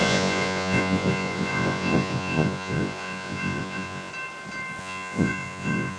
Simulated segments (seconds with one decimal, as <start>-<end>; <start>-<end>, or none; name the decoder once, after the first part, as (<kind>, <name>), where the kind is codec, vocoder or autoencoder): 0.0-4.1 (vocoder, Vocos); 4.8-6.0